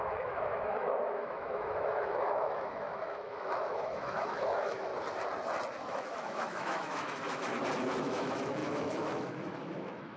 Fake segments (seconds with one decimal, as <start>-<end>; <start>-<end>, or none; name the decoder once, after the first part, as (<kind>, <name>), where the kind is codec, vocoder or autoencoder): 0.0-4.9 (autoencoder, DAC-VAE); 5.8-7.5; 8.0-10.2